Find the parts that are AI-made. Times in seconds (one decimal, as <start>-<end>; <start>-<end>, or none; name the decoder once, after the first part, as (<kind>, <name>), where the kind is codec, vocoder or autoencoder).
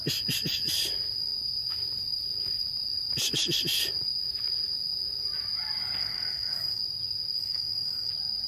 6.0-6.8 (codec, DAC); 7.4-8.1